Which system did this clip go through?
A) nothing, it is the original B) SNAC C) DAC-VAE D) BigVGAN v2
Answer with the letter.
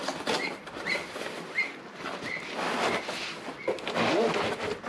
A